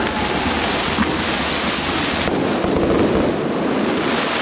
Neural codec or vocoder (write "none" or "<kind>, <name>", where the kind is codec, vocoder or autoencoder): none